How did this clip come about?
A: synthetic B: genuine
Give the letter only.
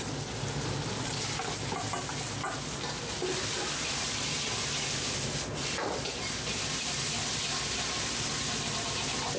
B